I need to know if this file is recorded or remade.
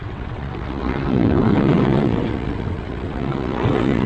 remade